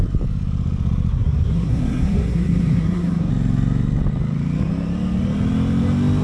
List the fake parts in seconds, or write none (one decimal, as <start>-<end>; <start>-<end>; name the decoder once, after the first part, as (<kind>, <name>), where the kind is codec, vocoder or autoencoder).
1.1-3.3 (codec, SNAC)